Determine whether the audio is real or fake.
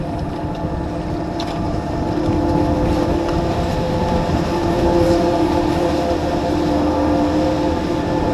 fake